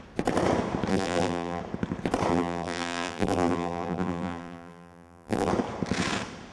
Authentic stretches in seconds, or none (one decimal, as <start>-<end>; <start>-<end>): 0.0-0.9; 1.6-2.3; 5.5-6.5